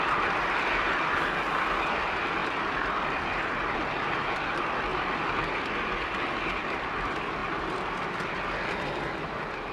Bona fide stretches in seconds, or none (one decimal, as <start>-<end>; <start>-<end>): 0.0-9.7